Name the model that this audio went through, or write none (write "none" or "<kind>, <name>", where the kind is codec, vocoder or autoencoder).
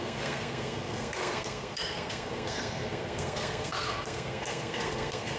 codec, SNAC